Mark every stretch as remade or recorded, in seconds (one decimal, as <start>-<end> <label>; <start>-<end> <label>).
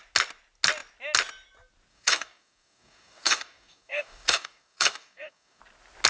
0.0-1.9 recorded; 1.9-5.6 remade; 5.6-6.1 recorded